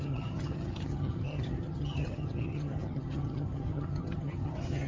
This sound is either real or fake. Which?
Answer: fake